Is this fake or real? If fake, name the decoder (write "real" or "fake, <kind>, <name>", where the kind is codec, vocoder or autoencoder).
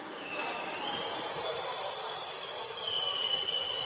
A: real